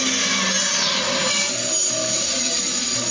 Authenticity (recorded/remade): recorded